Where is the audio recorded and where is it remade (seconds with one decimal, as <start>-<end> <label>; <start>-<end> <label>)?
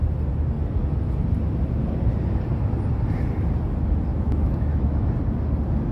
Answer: 0.0-4.1 recorded; 4.1-5.1 remade; 5.1-5.9 recorded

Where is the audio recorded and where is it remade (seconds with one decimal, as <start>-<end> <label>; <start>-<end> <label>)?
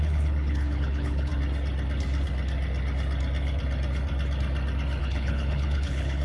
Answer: 0.0-1.3 remade; 1.3-5.0 recorded; 5.0-6.2 remade